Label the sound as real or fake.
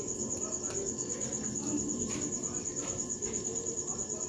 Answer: real